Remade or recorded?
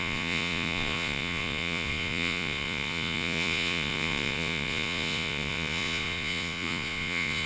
remade